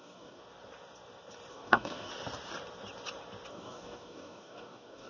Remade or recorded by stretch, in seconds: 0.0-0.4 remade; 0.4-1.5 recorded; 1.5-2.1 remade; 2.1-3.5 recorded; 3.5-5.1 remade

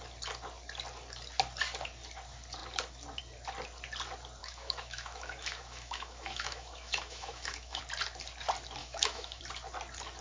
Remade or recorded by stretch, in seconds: 0.0-4.4 recorded; 4.4-7.8 remade; 7.8-8.8 recorded; 8.8-9.4 remade; 9.4-10.2 recorded

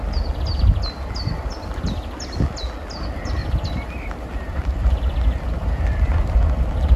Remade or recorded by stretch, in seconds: 0.0-3.4 recorded; 3.4-6.6 remade; 6.6-7.0 recorded

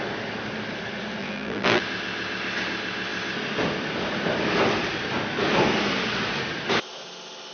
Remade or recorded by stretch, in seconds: 0.0-1.2 recorded; 1.2-1.8 remade; 1.8-7.5 recorded

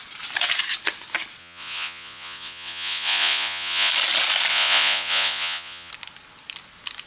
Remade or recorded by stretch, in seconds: 0.0-1.4 recorded; 1.4-3.9 remade; 3.9-4.5 recorded; 4.5-5.9 remade; 5.9-7.1 recorded

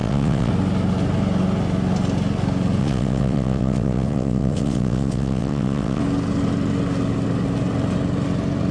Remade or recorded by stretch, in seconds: 0.0-0.5 remade; 0.5-2.8 recorded; 2.8-6.0 remade; 6.0-8.7 recorded

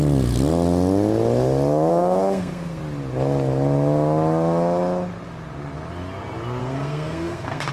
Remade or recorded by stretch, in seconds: 0.0-1.9 recorded; 1.9-2.8 remade; 2.8-6.6 recorded; 6.6-7.7 remade

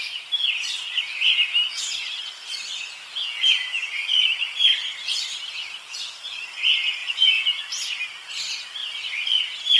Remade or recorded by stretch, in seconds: 0.0-3.1 recorded; 3.1-3.9 remade; 3.9-7.0 recorded; 7.0-7.6 remade; 7.6-9.8 recorded